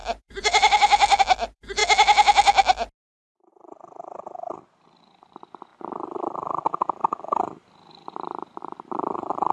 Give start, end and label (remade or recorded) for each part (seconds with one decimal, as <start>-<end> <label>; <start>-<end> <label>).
0.0-1.8 remade; 1.8-3.5 recorded; 3.5-5.7 remade; 5.7-6.6 recorded; 6.6-7.0 remade; 7.0-7.9 recorded; 7.9-9.5 remade